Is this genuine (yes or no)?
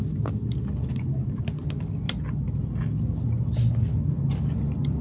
yes